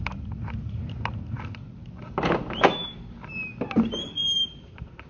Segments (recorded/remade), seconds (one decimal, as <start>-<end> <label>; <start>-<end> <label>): 0.0-5.1 recorded